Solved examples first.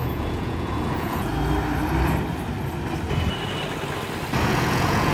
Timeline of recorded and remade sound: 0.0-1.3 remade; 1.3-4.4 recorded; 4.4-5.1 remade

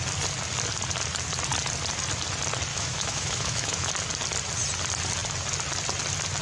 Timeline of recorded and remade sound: 0.0-2.7 recorded; 2.7-3.9 remade; 3.9-6.4 recorded

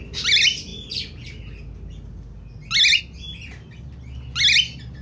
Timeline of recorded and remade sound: 0.0-5.0 recorded

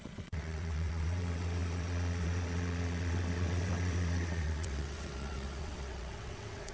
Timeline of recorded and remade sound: 0.0-6.7 remade

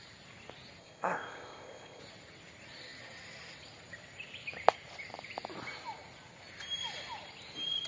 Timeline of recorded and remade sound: 0.0-0.8 recorded; 0.8-2.0 remade; 2.0-7.9 recorded

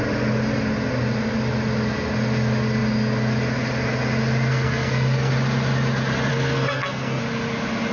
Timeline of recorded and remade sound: 0.0-4.5 recorded; 4.5-5.3 remade; 5.3-6.3 recorded; 6.3-7.2 remade; 7.2-7.9 recorded